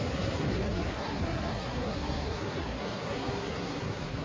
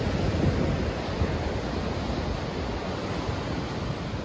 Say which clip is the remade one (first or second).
first